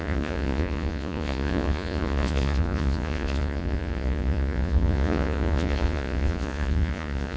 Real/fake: fake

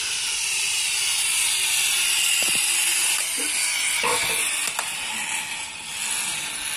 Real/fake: real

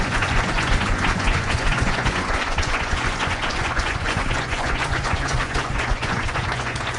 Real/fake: fake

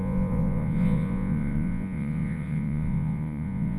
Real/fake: fake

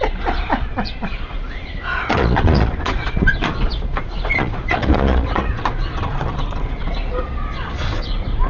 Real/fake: fake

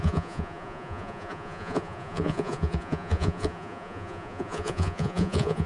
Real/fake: fake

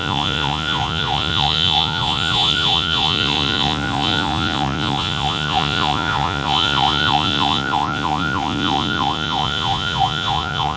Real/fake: fake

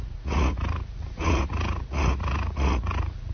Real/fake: fake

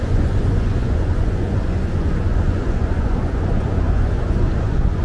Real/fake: fake